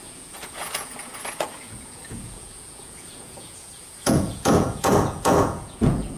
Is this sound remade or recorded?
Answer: remade